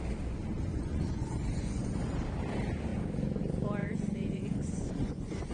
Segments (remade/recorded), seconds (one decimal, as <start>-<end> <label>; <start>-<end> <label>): 0.0-0.7 recorded; 0.7-1.9 remade; 1.9-3.8 recorded; 3.8-5.5 remade